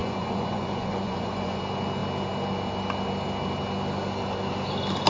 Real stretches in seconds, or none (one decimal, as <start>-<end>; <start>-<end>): 1.6-5.1